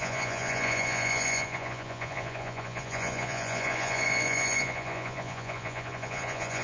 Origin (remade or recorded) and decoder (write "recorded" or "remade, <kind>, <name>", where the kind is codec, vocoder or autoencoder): remade, vocoder, Vocos